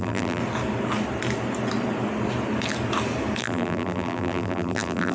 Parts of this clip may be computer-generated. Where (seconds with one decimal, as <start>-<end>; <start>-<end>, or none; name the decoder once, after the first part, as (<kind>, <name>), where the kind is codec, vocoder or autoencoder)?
0.0-0.4 (vocoder, BigVGAN v2); 3.4-5.1